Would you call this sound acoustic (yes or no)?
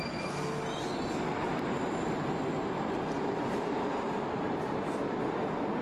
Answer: yes